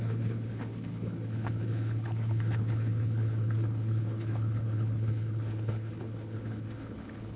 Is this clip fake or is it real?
fake